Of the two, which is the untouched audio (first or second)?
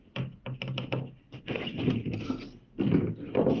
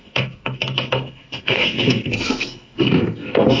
first